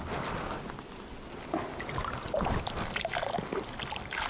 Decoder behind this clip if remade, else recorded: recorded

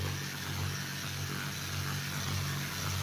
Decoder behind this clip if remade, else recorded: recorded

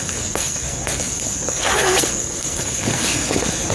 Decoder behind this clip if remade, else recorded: remade, codec, SNAC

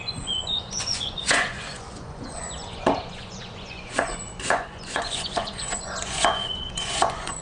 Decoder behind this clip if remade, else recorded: remade, vocoder, Vocos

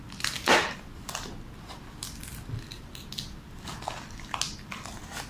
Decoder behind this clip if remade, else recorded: recorded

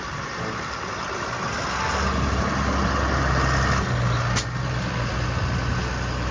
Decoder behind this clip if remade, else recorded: recorded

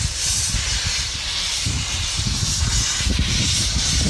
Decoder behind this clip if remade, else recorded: remade, vocoder, BigVGAN v2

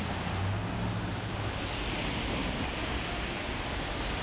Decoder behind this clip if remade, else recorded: recorded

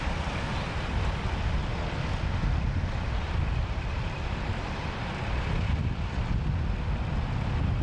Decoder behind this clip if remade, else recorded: recorded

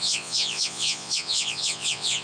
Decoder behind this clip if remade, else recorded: remade, vocoder, Vocos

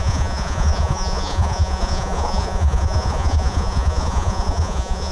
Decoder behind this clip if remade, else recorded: remade, vocoder, Vocos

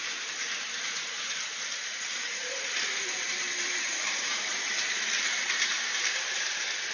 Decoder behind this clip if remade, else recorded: remade, vocoder, BigVGAN v2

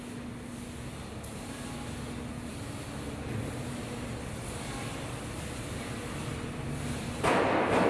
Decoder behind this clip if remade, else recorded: recorded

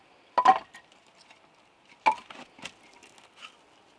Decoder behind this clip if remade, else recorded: recorded